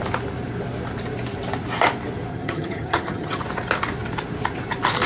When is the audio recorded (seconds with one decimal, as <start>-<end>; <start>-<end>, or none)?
0.0-2.3; 3.4-5.1

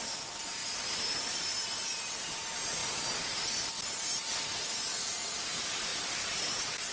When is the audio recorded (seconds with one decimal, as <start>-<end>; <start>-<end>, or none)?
0.0-6.9

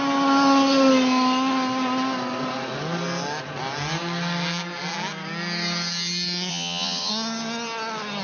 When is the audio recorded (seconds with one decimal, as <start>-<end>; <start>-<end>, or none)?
0.0-6.5; 7.1-8.2

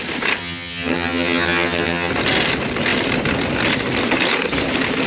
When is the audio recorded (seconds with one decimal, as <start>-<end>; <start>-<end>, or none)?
0.0-0.4; 2.1-5.1

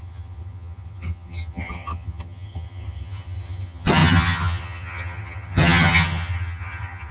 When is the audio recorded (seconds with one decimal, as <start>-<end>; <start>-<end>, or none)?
none